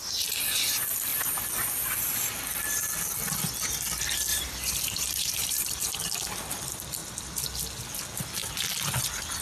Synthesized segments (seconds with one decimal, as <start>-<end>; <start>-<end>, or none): 4.3-6.0